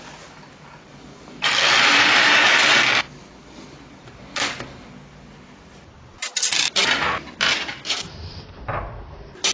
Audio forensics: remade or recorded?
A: recorded